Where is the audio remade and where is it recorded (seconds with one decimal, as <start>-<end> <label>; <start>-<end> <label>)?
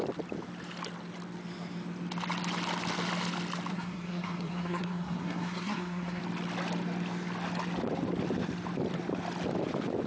0.0-3.7 recorded; 3.7-6.2 remade; 6.2-10.1 recorded